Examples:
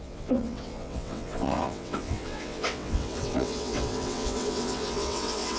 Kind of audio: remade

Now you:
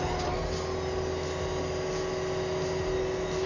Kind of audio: recorded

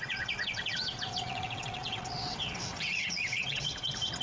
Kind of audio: remade